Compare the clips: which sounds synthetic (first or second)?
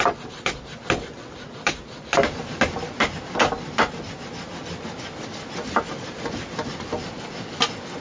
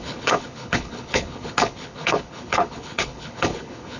second